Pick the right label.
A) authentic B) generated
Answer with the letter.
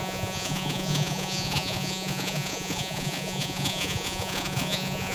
B